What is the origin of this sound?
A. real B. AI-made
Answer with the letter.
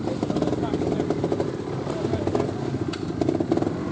A